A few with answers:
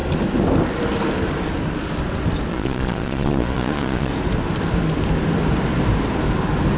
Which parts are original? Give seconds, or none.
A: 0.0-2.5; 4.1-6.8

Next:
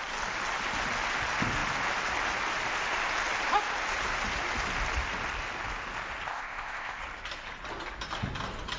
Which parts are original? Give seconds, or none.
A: 0.0-6.3; 7.0-8.8

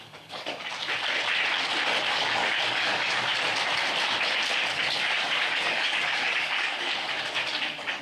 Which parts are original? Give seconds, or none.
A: 0.7-2.1; 3.3-4.6

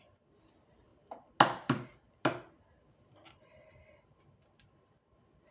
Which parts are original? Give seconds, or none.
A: 0.0-5.5